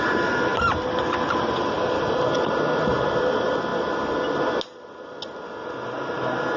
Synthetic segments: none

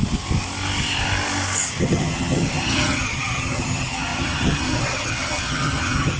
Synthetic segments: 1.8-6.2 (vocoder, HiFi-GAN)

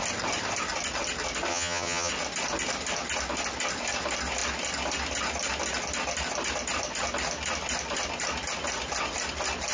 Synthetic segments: 1.5-2.1 (vocoder, HiFi-GAN)